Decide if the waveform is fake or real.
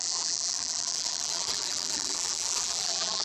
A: fake